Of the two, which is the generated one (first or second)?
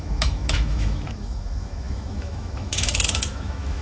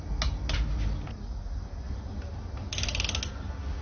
first